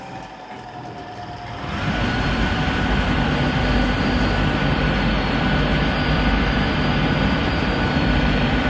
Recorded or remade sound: remade